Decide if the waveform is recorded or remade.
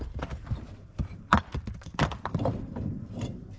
remade